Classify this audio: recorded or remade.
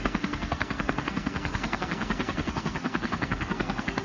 remade